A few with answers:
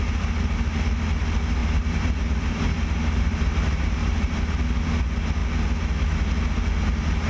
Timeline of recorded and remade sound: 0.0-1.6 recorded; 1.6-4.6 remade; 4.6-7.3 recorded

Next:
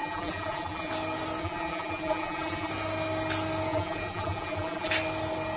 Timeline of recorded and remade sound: 0.0-0.9 remade; 0.9-1.4 recorded; 1.4-2.7 remade; 2.7-3.7 recorded; 3.7-4.9 remade; 4.9-5.6 recorded

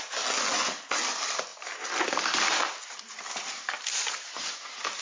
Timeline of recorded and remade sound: 0.0-1.5 recorded; 1.5-3.6 remade; 3.6-5.0 recorded

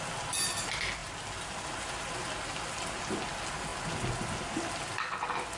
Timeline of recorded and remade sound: 0.0-5.6 recorded